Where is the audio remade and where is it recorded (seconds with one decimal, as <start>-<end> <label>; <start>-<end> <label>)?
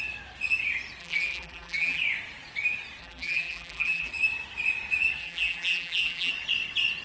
0.0-1.0 recorded; 1.0-2.0 remade; 2.0-3.0 recorded; 3.0-4.1 remade; 4.1-5.2 recorded; 5.2-6.3 remade; 6.3-7.0 recorded